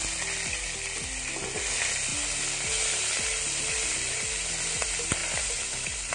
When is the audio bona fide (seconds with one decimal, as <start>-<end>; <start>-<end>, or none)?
0.0-6.1